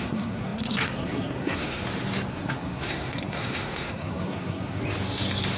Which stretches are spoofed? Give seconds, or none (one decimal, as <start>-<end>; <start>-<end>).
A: 0.0-1.8; 2.3-4.8